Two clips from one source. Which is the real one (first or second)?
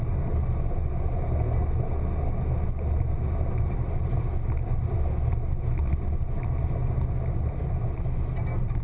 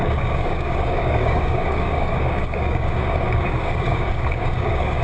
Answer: first